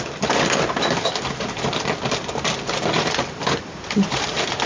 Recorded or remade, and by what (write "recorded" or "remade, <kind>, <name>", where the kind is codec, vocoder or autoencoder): recorded